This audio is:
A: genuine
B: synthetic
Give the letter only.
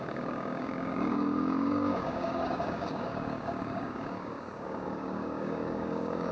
B